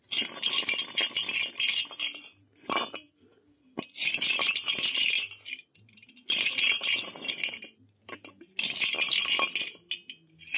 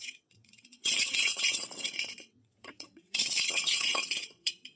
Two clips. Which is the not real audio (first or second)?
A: second